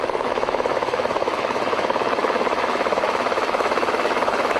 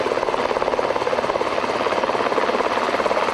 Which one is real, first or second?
second